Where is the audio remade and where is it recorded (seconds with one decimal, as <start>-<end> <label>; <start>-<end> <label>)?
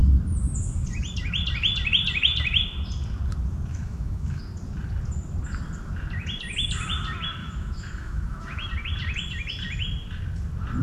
0.0-3.7 recorded; 3.7-4.4 remade; 4.4-7.4 recorded; 7.4-8.7 remade; 8.7-10.8 recorded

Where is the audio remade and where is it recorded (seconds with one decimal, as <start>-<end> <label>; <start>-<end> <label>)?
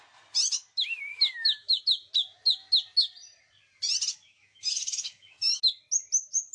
0.0-1.1 recorded; 1.1-1.8 remade; 1.8-4.1 recorded; 4.1-5.6 remade; 5.6-6.5 recorded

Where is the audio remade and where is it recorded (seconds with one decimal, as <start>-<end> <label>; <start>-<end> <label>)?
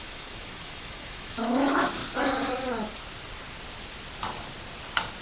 0.0-2.0 remade; 2.0-5.2 recorded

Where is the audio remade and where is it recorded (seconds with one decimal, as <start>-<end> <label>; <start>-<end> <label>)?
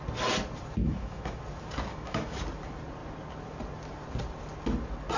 0.0-0.8 recorded; 0.8-1.4 remade; 1.4-1.9 recorded; 1.9-2.4 remade; 2.4-5.2 recorded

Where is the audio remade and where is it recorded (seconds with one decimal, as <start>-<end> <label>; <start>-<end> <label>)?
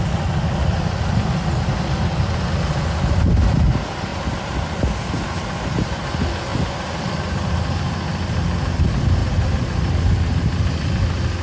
0.0-11.4 recorded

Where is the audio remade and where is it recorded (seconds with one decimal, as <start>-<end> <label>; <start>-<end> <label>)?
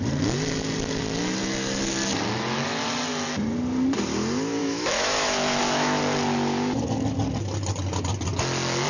0.0-4.6 recorded; 4.6-6.0 remade; 6.0-8.9 recorded